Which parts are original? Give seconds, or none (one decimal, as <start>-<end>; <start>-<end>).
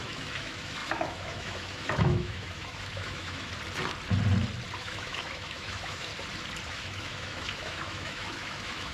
3.5-4.8; 6.1-6.7